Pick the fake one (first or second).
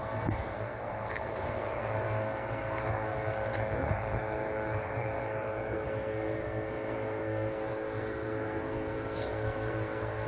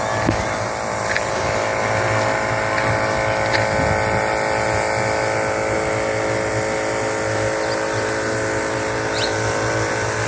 first